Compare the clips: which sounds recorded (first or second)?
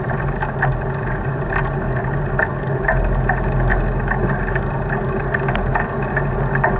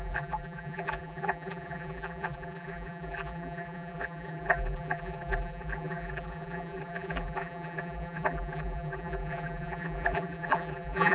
first